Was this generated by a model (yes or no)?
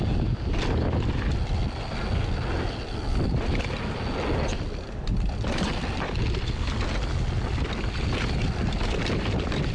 no